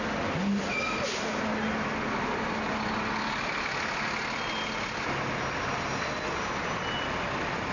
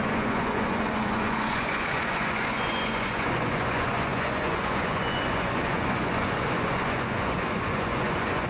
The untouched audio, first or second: first